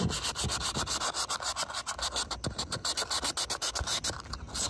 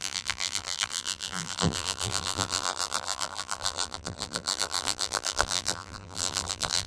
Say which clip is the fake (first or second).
second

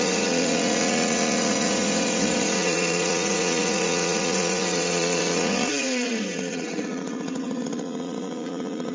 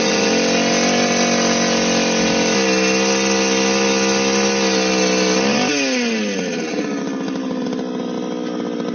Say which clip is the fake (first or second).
first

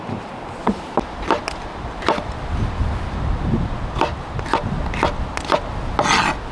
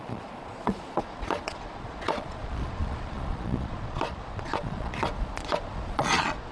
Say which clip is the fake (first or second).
second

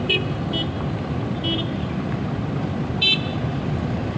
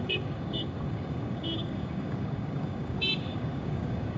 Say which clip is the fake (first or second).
second